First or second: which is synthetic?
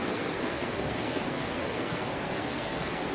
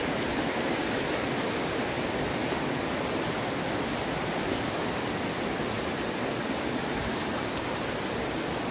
first